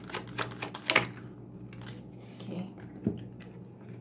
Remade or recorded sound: recorded